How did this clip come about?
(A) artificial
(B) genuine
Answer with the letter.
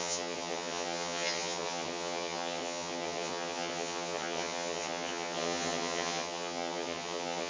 A